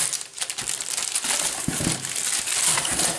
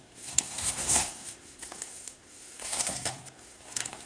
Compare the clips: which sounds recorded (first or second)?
first